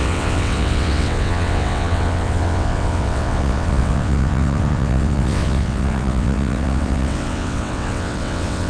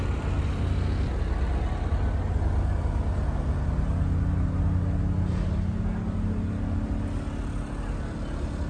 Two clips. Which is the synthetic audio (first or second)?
first